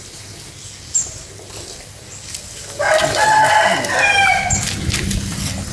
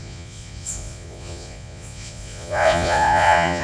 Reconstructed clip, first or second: second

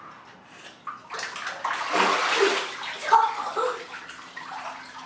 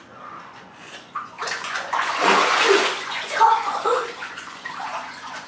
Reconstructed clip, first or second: second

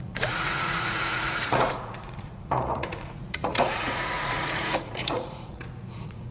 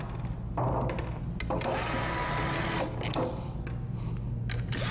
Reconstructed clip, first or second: first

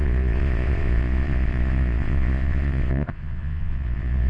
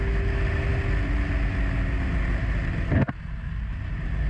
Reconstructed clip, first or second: first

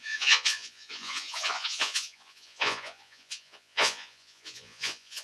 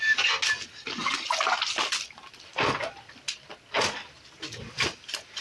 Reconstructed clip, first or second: first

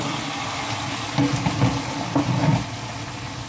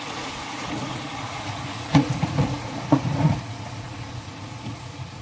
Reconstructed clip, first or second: second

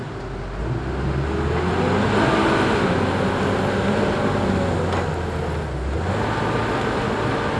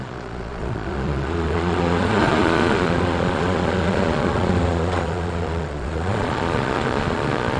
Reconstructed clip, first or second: second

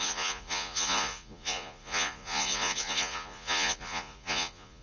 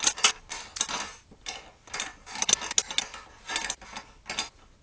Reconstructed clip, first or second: first